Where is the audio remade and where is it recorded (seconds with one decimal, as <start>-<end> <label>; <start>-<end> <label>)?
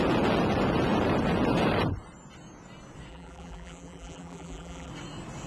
0.0-3.1 recorded; 3.1-4.9 remade; 4.9-5.5 recorded